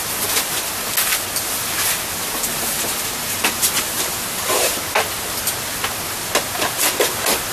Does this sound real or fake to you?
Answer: real